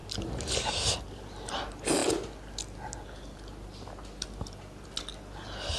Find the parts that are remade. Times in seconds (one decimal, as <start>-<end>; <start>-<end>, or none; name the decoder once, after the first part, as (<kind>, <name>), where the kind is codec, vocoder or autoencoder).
none